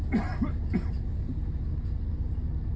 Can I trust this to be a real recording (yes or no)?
yes